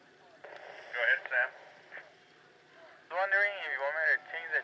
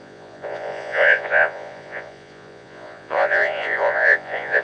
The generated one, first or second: second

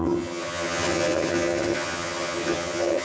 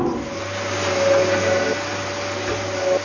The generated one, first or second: first